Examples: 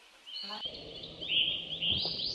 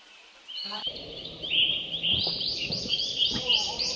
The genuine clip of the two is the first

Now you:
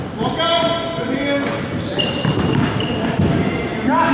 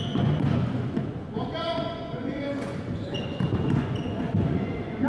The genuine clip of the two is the first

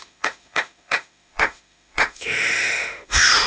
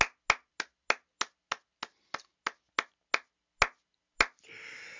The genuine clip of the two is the second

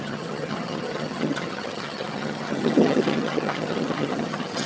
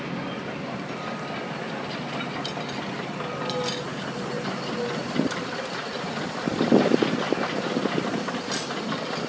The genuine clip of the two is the second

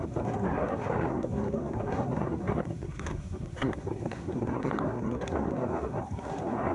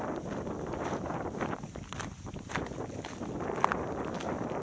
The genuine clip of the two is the second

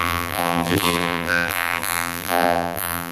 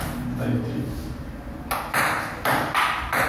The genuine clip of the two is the second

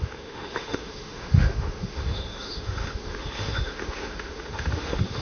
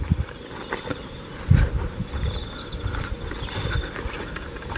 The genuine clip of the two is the second